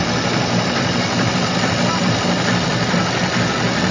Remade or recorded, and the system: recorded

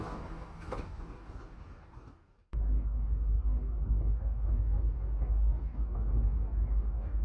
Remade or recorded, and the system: remade, codec, DAC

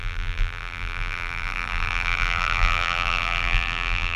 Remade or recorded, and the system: remade, vocoder, BigVGAN v2